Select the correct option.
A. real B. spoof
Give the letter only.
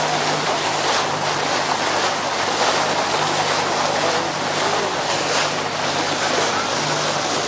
A